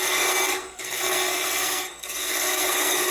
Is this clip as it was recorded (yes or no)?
no